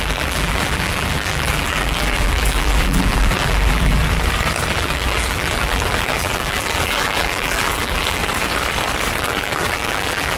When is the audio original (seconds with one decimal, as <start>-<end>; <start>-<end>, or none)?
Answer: 4.0-4.7; 8.2-9.2